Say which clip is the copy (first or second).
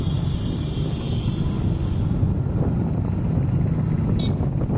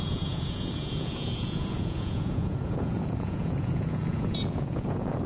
second